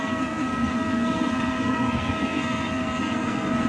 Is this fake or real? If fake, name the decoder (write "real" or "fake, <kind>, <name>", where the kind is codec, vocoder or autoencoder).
fake, codec, SNAC